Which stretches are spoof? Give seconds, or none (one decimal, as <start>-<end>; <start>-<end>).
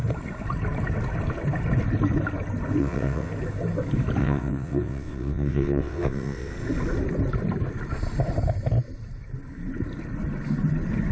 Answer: 2.8-3.3; 4.2-6.5